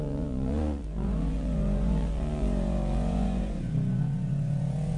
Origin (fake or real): fake